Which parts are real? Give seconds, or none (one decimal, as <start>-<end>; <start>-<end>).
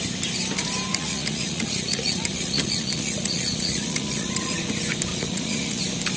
0.0-0.9; 4.6-5.1; 5.8-6.2